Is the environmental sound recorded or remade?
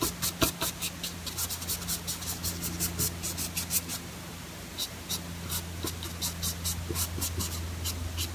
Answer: recorded